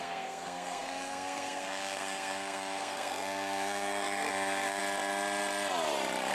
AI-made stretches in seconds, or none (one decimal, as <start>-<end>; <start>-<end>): 0.0-4.8